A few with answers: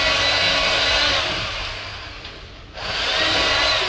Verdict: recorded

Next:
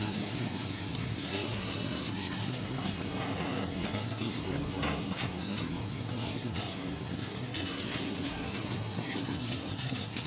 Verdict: remade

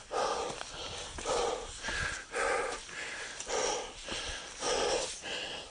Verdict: recorded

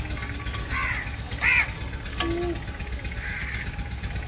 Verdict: recorded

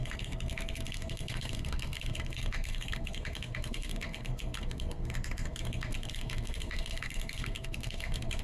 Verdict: remade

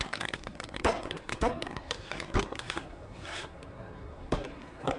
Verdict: remade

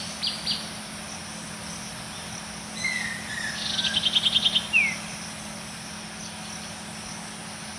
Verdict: recorded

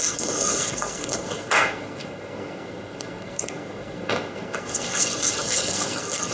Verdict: remade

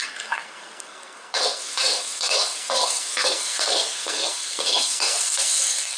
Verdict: remade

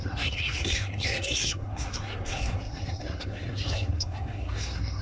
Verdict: remade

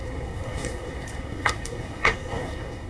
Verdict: remade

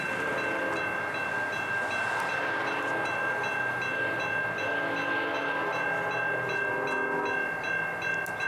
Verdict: recorded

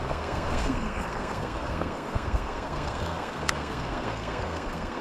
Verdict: remade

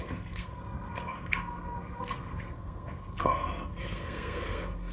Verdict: remade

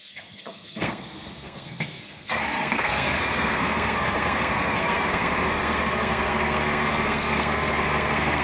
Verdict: remade